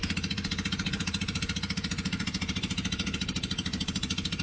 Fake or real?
real